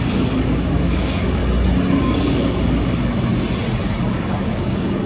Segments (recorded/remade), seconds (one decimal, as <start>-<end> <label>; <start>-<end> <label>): 0.0-1.4 remade; 1.4-2.0 recorded; 2.0-3.3 remade; 3.3-4.0 recorded; 4.0-5.1 remade